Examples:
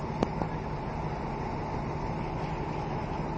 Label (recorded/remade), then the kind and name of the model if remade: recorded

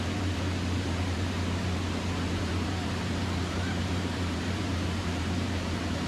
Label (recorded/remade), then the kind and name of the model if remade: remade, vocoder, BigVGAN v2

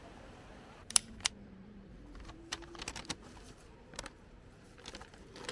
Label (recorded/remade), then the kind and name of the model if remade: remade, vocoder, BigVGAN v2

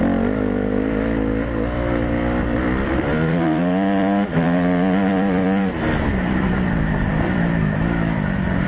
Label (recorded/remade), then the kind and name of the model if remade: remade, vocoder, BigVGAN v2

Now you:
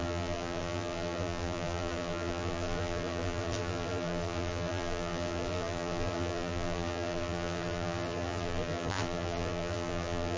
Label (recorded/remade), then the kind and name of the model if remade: remade, vocoder, BigVGAN v2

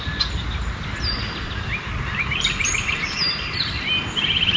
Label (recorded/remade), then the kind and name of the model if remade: recorded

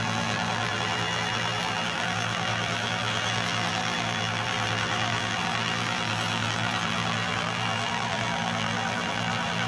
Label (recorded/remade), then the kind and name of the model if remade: remade, vocoder, BigVGAN v2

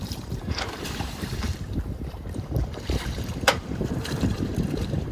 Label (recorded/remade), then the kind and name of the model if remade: remade, vocoder, BigVGAN v2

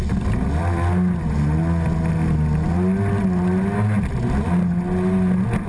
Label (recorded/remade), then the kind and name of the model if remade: recorded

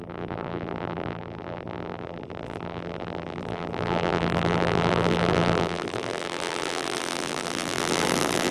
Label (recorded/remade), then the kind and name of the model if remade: remade, vocoder, BigVGAN v2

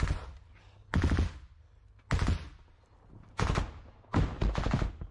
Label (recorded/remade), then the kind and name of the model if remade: recorded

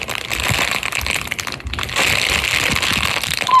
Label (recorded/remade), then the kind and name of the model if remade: recorded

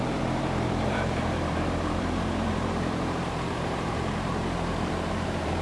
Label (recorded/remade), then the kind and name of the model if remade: remade, vocoder, BigVGAN v2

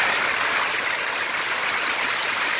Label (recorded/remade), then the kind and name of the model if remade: recorded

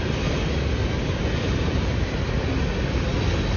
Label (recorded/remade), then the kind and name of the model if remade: recorded